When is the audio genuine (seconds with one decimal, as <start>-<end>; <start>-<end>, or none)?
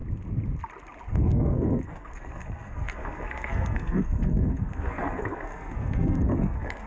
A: 0.0-1.1